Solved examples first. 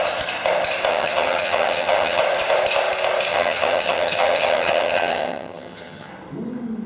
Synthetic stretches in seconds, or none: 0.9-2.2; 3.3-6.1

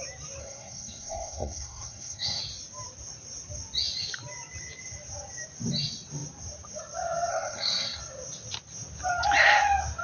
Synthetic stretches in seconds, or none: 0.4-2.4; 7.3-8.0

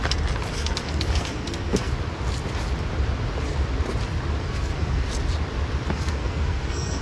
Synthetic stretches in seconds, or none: 0.5-1.9; 4.4-5.1; 5.9-7.0

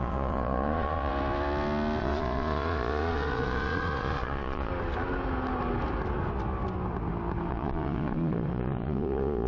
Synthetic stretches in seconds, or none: 0.0-1.1; 2.0-4.7; 7.5-9.5

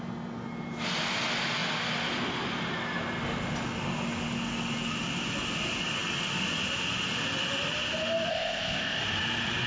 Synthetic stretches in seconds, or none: 8.3-9.0

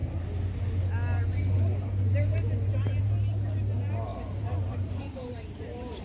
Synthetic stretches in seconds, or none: 4.1-6.0